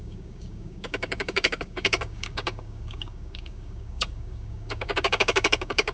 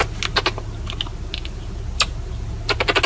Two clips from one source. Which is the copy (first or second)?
first